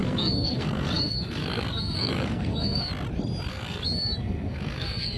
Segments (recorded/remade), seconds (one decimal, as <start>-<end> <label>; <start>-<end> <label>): 0.0-2.9 remade; 2.9-3.5 recorded; 3.5-5.2 remade